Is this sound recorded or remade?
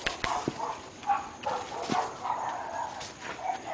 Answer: recorded